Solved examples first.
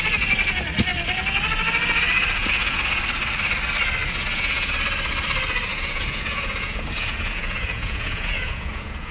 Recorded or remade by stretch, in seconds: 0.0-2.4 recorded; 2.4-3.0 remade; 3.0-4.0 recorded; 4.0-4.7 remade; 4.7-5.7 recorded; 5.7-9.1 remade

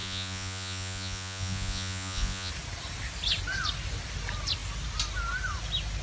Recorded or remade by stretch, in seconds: 0.0-2.5 remade; 2.5-6.0 recorded

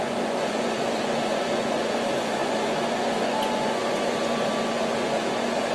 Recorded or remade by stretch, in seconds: 0.0-5.7 remade